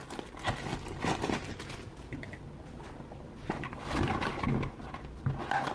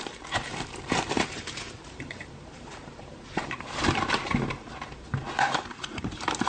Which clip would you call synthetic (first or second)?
second